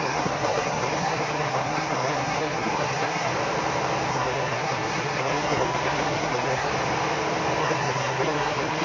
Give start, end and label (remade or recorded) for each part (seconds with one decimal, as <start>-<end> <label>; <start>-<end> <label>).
0.0-3.3 remade; 3.3-4.1 recorded; 4.1-6.7 remade; 6.7-7.6 recorded; 7.6-8.8 remade